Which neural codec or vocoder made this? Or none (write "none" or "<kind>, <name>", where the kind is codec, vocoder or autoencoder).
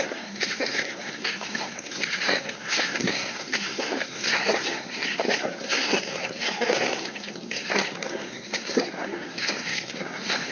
codec, SNAC